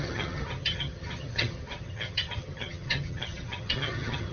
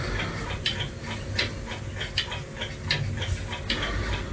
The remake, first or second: first